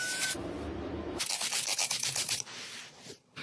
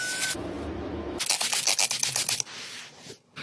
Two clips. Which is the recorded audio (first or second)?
second